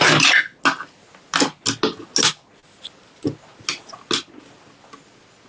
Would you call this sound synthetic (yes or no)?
no